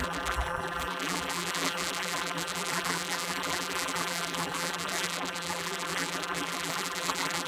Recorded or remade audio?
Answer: remade